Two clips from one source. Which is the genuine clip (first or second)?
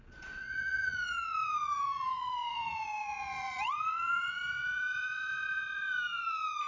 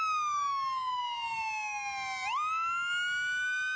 second